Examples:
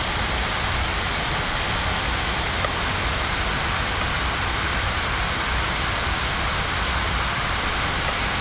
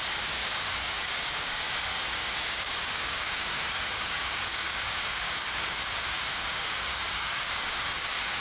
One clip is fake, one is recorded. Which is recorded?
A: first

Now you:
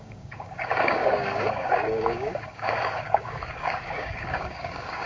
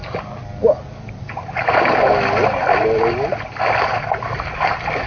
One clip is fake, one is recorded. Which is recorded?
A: second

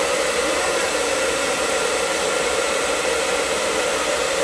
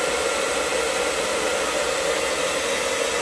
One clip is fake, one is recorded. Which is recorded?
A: second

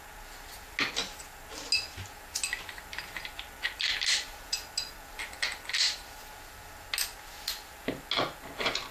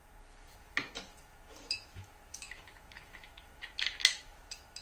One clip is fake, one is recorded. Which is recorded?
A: first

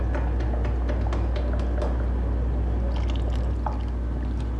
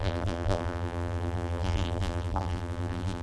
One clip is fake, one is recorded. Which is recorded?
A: first